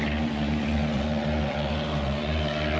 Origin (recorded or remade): remade